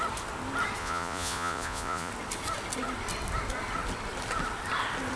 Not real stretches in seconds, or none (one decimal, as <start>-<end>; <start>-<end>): 0.8-2.1